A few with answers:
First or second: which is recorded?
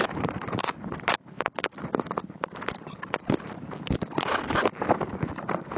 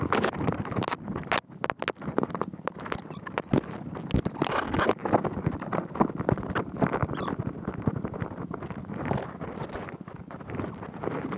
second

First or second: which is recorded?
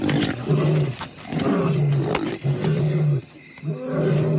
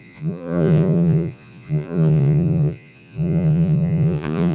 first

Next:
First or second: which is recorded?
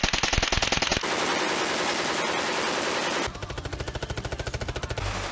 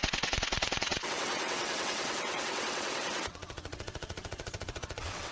first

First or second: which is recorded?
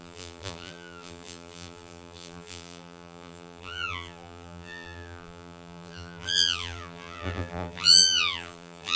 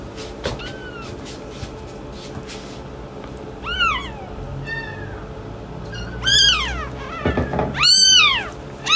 second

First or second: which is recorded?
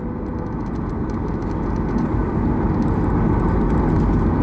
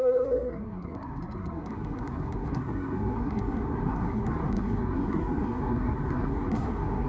first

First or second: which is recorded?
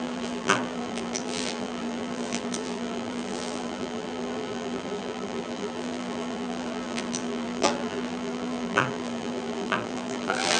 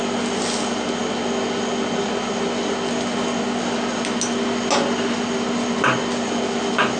second